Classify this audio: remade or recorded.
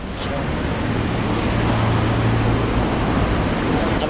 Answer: recorded